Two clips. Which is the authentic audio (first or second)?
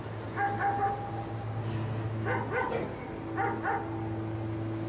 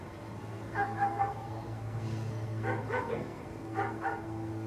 first